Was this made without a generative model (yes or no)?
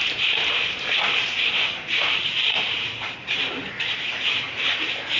no